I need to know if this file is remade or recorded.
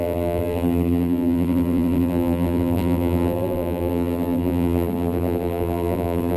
remade